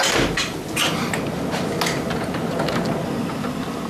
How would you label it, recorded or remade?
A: recorded